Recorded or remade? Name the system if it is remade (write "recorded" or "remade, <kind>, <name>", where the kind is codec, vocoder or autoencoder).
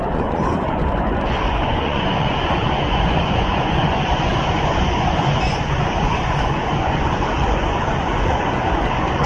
remade, vocoder, Vocos